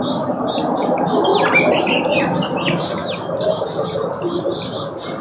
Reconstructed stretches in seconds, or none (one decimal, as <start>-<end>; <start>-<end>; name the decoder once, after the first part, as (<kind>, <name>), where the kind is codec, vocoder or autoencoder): none